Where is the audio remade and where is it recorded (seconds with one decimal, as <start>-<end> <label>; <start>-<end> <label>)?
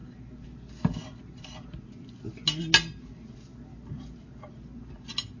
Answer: 0.0-5.4 recorded